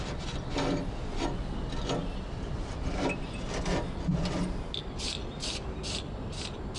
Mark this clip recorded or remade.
recorded